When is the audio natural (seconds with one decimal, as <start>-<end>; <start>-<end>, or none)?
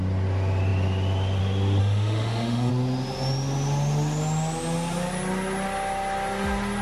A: 0.0-1.8; 2.7-6.8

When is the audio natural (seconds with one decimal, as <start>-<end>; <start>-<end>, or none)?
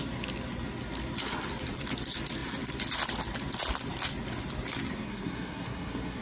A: 0.0-4.9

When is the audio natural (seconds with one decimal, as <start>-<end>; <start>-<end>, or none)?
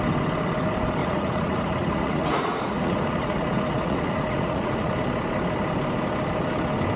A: 0.0-1.0; 4.9-7.0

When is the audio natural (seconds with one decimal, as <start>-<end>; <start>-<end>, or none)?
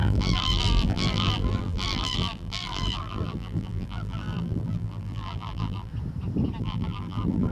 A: 5.9-6.6